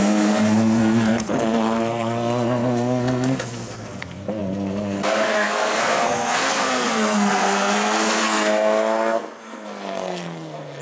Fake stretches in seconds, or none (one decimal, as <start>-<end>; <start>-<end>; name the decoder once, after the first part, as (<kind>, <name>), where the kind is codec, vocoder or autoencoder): 0.0-10.8 (codec, SNAC)